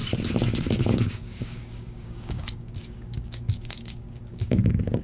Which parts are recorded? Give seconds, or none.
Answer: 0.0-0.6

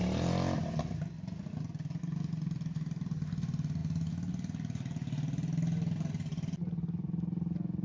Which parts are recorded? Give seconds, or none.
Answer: 0.0-7.8

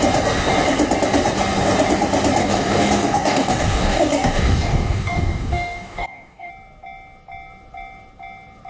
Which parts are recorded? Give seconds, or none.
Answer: 0.0-2.4; 6.5-8.7

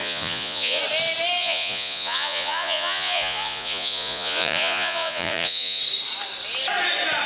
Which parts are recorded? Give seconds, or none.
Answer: 0.8-1.4; 5.8-7.3

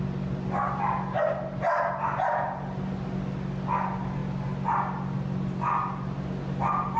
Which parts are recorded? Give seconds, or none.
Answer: 0.0-7.0

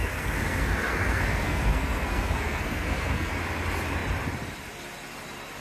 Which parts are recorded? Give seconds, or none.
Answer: 3.3-5.6